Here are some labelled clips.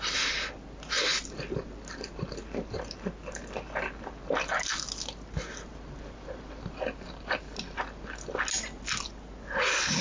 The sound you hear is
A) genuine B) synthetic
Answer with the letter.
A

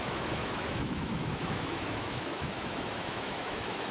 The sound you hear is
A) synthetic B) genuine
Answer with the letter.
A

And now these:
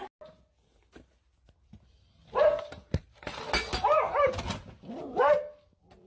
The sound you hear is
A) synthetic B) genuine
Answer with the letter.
B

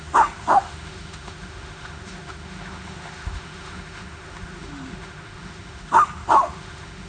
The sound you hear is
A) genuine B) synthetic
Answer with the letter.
B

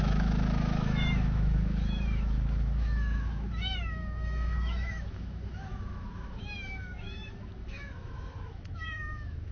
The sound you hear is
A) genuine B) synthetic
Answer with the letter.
B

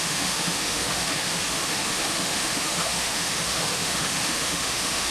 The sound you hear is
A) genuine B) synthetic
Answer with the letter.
B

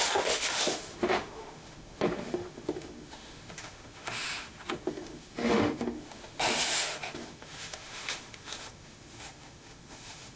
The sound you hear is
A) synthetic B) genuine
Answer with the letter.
A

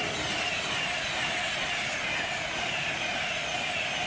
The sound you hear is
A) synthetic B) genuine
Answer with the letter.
B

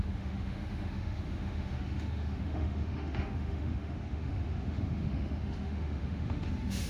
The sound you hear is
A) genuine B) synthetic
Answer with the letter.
B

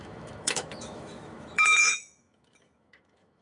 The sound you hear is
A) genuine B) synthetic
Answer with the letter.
B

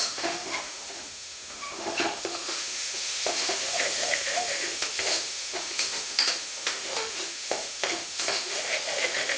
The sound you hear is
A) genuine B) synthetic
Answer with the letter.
B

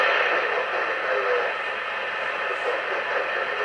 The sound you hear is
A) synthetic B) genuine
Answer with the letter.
B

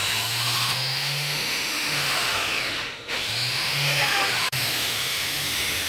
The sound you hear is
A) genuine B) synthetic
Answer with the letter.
B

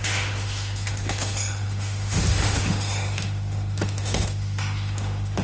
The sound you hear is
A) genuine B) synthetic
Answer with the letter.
B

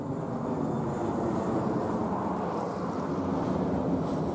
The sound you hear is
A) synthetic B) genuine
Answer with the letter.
B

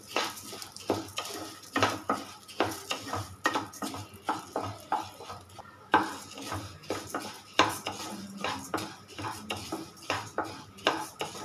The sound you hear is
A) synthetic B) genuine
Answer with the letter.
B